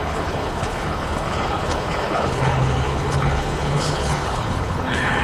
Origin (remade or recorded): remade